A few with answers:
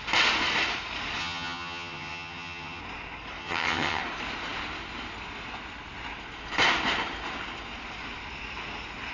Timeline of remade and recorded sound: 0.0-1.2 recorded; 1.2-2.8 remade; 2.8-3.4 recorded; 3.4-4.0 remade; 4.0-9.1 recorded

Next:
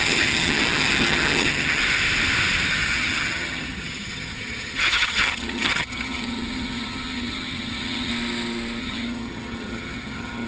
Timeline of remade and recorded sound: 0.0-1.8 remade; 1.8-2.7 recorded; 2.7-8.1 remade; 8.1-8.8 recorded; 8.8-10.5 remade